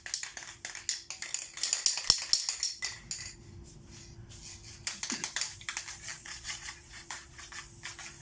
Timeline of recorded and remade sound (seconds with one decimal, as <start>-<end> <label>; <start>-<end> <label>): 0.0-6.2 recorded; 6.2-7.4 remade; 7.4-8.2 recorded